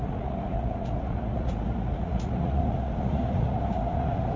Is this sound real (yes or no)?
no